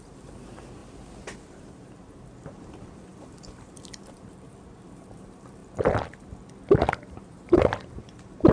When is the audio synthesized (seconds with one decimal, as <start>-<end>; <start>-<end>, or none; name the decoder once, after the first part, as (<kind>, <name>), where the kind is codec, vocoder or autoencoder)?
0.0-0.8 (vocoder, BigVGAN v2); 1.7-5.6; 6.9-8.5